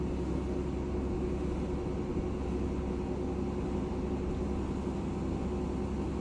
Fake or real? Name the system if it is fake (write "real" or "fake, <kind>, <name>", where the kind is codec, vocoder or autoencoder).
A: real